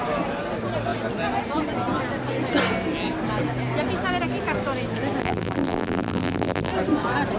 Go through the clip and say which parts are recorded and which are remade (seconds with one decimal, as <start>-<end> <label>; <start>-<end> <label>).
0.0-5.2 recorded; 5.2-6.7 remade; 6.7-7.4 recorded